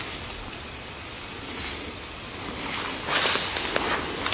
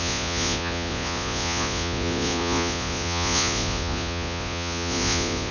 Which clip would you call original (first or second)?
first